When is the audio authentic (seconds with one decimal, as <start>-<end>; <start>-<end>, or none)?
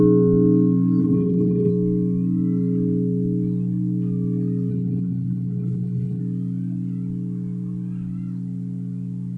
0.0-1.0; 1.7-4.7; 6.2-9.4